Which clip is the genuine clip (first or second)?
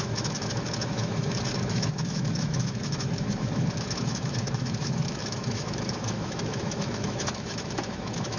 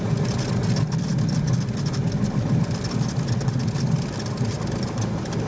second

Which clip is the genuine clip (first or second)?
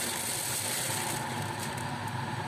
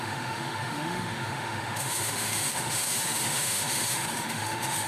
first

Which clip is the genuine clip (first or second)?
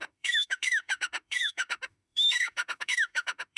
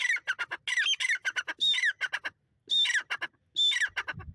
second